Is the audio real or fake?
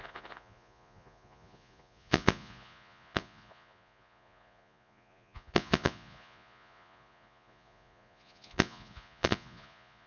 fake